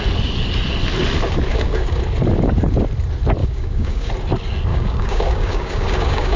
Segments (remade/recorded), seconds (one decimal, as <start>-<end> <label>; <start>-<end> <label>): 0.0-1.5 recorded; 1.5-2.0 remade; 2.0-3.4 recorded; 3.4-4.1 remade; 4.1-4.7 recorded; 4.7-6.4 remade